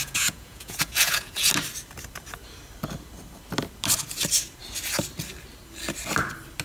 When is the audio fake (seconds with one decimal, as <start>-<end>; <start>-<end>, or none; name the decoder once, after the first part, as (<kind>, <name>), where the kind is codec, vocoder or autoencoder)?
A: 0.0-1.5 (vocoder, Vocos)